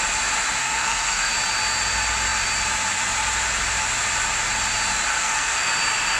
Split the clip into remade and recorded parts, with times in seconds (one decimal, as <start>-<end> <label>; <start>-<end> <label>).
0.0-0.6 recorded; 0.6-1.3 remade; 1.3-5.1 recorded; 5.1-5.7 remade; 5.7-6.2 recorded